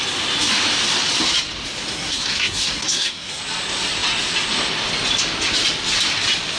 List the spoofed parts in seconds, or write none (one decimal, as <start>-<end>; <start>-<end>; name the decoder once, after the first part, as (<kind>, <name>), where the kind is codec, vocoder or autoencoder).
1.9-3.4 (codec, SNAC)